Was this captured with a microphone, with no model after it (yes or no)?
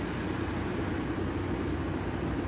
yes